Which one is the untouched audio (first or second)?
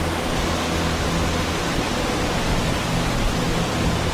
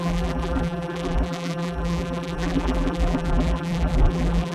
first